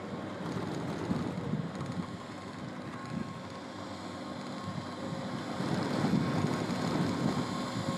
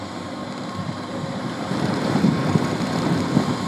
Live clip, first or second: first